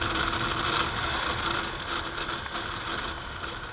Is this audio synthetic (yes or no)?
no